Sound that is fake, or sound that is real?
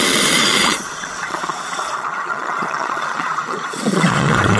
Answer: fake